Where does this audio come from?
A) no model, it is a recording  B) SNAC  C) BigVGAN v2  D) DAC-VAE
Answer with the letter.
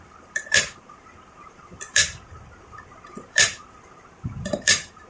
C